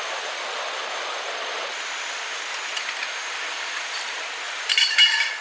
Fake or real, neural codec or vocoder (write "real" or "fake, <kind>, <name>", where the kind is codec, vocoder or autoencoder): real